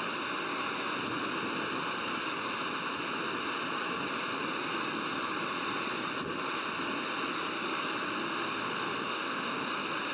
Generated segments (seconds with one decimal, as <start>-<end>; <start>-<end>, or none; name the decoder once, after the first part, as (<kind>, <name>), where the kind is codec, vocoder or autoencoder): 8.2-9.7 (autoencoder, DAC-VAE)